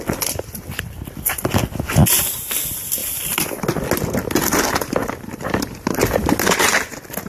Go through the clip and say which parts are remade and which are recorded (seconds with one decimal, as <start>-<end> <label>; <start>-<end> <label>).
0.0-7.3 recorded